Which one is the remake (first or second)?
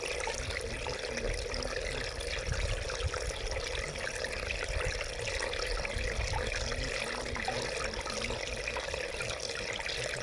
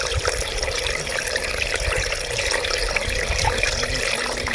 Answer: second